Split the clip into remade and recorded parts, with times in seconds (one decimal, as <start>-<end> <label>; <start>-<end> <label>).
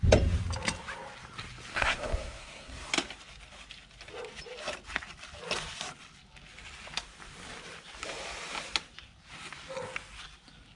0.0-1.7 recorded; 1.7-2.9 remade; 2.9-10.8 recorded